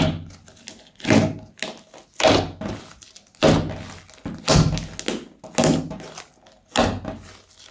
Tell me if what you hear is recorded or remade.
recorded